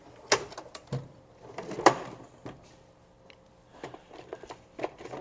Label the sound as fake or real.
real